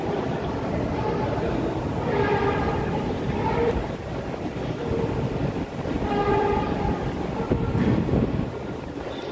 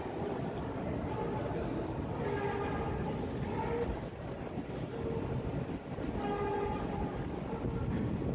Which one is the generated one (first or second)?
first